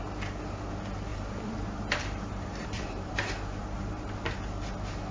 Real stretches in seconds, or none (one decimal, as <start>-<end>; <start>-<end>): 0.0-1.1; 4.2-5.1